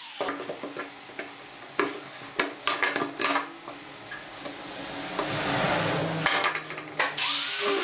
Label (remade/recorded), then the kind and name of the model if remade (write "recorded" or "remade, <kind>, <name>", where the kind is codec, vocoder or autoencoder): recorded